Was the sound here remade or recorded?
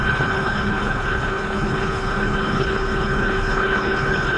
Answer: remade